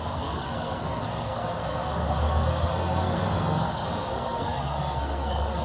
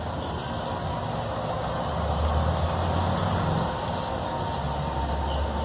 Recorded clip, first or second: second